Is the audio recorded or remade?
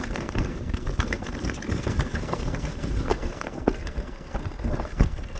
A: remade